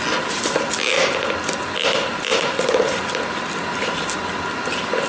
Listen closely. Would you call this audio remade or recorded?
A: recorded